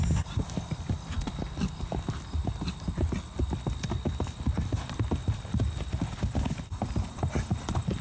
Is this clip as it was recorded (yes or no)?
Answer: yes